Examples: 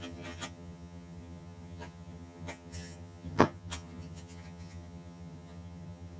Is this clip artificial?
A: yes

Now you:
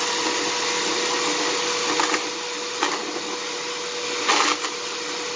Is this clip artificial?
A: no